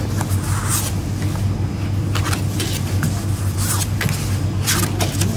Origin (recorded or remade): recorded